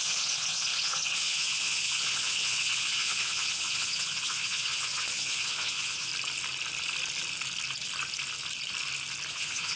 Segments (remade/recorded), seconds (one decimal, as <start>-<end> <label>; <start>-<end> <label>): 0.0-6.1 remade; 6.1-9.3 recorded; 9.3-9.8 remade